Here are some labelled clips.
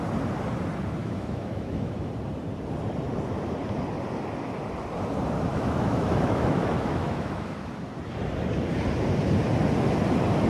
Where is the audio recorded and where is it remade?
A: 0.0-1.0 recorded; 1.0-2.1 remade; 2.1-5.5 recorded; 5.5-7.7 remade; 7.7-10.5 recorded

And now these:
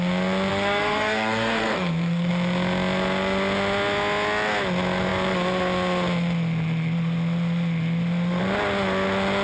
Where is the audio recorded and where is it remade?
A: 0.0-0.5 recorded; 0.5-2.3 remade; 2.3-9.4 recorded